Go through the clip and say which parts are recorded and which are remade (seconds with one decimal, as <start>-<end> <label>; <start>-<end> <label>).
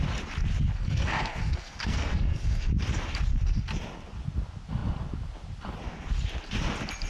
0.0-0.8 recorded; 0.8-2.7 remade; 2.7-7.1 recorded